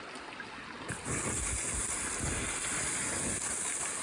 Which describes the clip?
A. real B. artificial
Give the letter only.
A